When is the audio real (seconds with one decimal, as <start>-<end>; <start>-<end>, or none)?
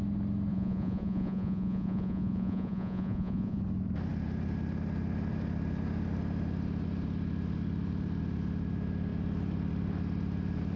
0.0-0.5; 3.6-10.8